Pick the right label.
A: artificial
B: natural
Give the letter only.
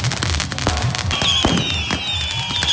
B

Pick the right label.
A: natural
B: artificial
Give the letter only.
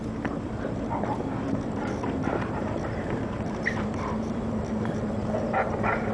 B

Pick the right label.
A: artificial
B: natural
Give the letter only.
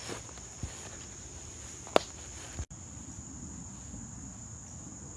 B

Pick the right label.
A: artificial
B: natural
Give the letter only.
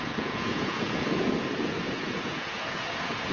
A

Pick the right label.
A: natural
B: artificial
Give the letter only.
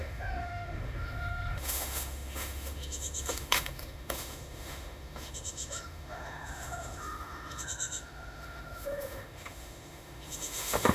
B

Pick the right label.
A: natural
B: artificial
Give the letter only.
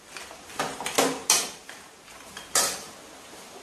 A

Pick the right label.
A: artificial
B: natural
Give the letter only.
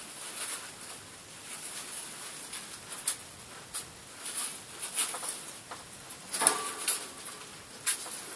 B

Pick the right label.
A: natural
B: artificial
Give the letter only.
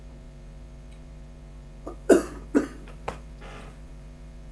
B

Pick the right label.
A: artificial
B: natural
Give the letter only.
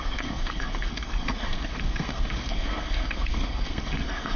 A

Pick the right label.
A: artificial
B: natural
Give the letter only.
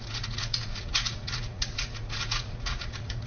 A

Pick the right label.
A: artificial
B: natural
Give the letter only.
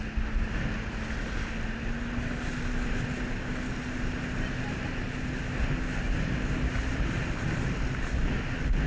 B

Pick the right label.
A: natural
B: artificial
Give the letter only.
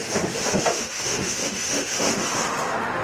B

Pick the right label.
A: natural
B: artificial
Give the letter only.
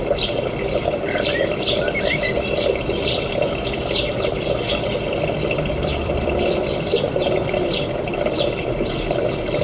B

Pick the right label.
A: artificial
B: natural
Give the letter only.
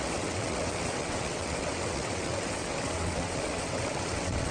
A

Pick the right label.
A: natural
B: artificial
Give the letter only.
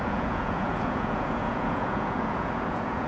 B